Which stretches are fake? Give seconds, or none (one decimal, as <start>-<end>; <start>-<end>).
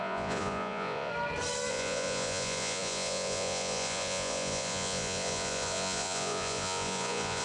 0.0-1.1; 1.7-7.4